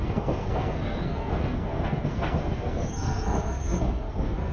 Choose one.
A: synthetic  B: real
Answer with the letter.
A